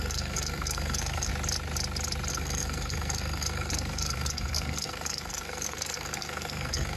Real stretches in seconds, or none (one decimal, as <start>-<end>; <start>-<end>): 1.3-2.3